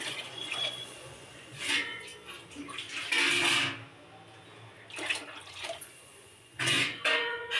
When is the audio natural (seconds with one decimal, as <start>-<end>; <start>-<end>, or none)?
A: 2.1-5.5

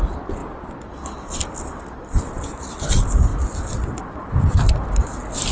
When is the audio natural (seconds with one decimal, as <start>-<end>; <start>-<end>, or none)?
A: 0.0-5.5